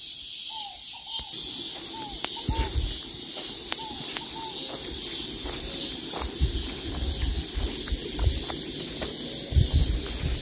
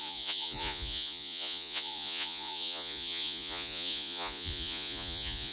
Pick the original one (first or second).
first